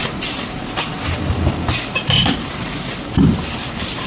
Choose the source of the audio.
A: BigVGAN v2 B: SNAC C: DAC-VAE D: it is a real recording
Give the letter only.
A